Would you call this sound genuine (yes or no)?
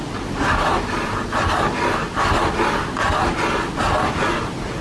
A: yes